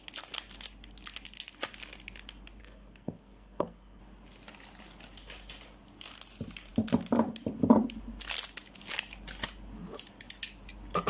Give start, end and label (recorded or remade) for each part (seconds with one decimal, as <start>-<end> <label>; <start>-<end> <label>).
0.0-2.6 recorded; 2.6-4.0 remade; 4.0-11.1 recorded